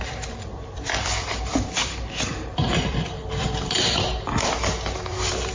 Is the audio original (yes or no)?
no